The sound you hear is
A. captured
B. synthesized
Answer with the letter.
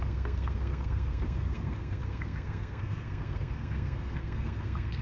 B